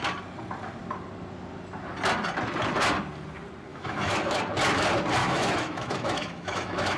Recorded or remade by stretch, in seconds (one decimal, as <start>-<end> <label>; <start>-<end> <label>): 0.0-3.7 recorded; 3.7-4.4 remade; 4.4-5.2 recorded; 5.2-7.0 remade